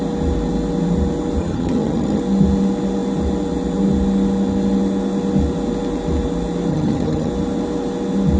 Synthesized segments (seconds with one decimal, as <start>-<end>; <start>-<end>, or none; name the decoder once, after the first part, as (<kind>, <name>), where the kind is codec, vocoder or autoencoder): 1.4-2.2 (vocoder, HiFi-GAN); 6.7-7.3

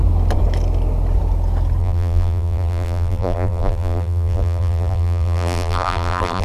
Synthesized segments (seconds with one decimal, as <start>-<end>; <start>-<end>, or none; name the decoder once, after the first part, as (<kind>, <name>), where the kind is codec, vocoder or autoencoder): 1.8-6.4 (vocoder, BigVGAN v2)

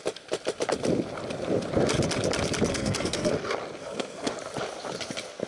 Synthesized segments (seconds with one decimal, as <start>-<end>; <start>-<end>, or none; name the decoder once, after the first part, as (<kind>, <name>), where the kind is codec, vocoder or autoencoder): 2.7-3.3 (codec, SNAC); 3.8-4.3

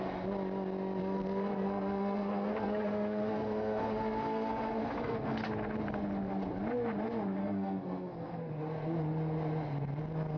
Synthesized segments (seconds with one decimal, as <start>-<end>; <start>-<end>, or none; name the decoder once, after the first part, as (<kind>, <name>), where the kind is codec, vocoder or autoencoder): 1.0-5.4 (codec, SNAC); 7.4-8.5

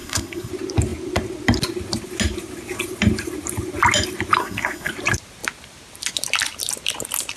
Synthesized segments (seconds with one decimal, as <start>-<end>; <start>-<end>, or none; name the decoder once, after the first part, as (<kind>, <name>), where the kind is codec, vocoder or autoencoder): 0.0-0.5 (codec, SNAC); 4.4-4.9

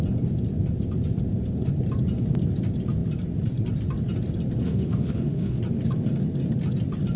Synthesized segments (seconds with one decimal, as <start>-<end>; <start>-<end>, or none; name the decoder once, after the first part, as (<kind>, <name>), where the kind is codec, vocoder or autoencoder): 4.6-5.6 (autoencoder, DAC-VAE)

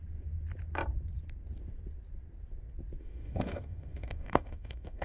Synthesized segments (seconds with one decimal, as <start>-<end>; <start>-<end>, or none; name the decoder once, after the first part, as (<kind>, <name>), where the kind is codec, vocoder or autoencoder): 3.0-5.0 (autoencoder, DAC-VAE)

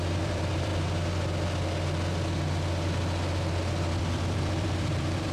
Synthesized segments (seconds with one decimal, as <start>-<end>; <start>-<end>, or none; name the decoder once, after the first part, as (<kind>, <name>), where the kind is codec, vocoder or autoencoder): 0.0-0.7 (vocoder, BigVGAN v2); 3.9-5.3